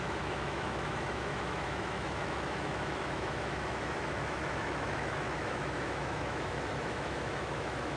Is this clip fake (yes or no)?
yes